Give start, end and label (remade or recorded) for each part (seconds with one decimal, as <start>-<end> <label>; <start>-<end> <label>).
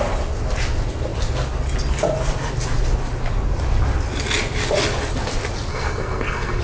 0.0-5.7 recorded; 5.7-6.6 remade